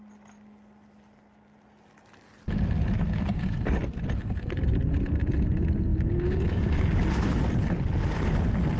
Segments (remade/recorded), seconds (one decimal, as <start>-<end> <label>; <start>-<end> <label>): 0.0-5.9 recorded; 5.9-6.7 remade; 6.7-8.8 recorded